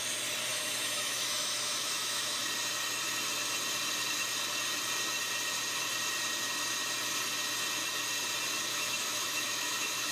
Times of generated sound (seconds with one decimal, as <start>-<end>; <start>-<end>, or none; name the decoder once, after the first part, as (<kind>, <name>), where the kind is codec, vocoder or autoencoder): 0.5-2.4 (autoencoder, DAC-VAE); 8.7-10.1